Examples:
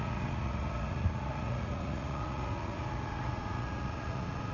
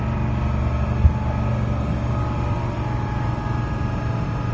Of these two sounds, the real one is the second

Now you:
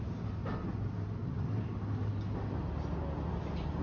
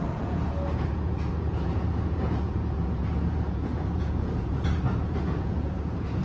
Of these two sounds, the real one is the first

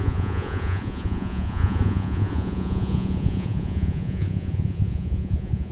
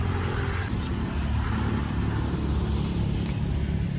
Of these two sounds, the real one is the second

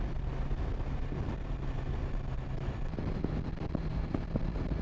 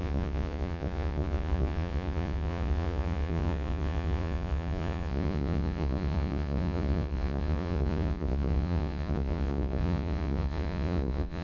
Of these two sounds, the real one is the first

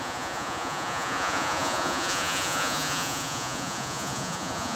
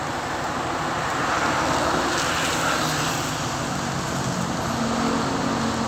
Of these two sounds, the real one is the second